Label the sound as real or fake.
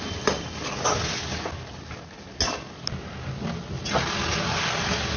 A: real